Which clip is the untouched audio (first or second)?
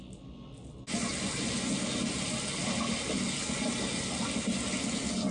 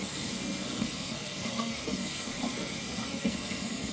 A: first